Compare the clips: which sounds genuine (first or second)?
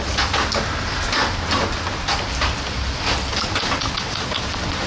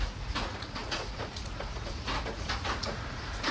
first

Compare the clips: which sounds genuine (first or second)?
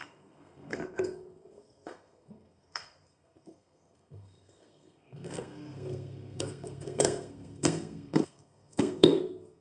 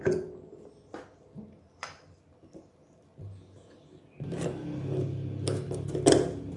second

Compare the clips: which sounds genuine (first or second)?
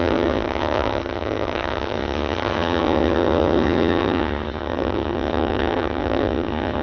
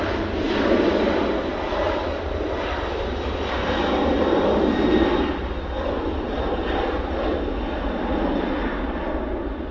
second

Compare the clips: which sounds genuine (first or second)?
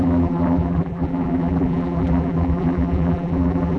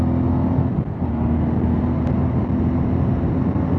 second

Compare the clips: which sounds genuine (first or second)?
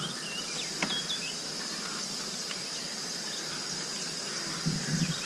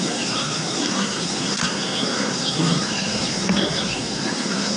first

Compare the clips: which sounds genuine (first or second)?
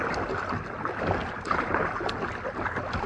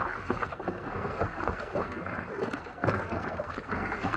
first